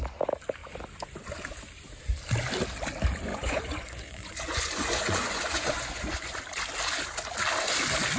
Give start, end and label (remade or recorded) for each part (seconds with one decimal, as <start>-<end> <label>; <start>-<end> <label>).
0.0-3.3 recorded; 3.3-6.4 remade; 6.4-8.2 recorded